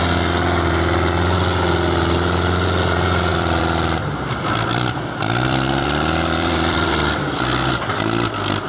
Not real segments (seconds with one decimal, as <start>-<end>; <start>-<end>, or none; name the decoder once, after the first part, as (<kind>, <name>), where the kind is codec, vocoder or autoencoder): 3.3-7.7 (vocoder, BigVGAN v2)